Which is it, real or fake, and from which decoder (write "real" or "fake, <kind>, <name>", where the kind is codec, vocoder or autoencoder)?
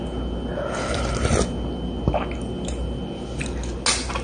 real